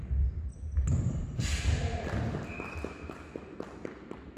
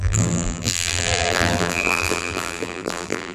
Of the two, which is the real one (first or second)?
first